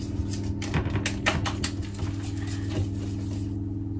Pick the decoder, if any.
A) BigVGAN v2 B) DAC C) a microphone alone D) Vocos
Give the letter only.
C